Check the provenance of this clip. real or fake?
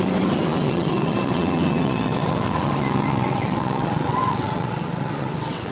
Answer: fake